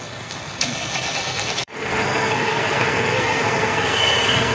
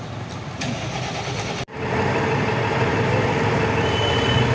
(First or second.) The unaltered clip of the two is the second